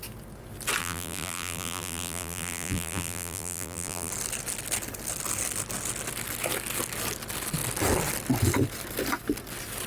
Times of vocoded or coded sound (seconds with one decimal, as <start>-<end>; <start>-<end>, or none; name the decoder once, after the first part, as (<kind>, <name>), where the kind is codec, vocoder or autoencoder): 0.8-4.1 (vocoder, BigVGAN v2)